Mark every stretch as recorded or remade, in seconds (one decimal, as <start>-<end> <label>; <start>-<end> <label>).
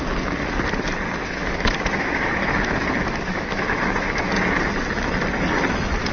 0.0-1.2 recorded; 1.2-4.3 remade; 4.3-6.1 recorded